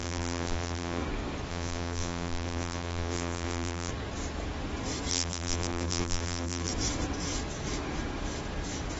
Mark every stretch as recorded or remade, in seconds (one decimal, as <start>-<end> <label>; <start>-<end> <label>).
0.0-1.0 remade; 1.0-1.5 recorded; 1.5-3.9 remade; 3.9-5.1 recorded; 5.1-6.7 remade; 6.7-9.0 recorded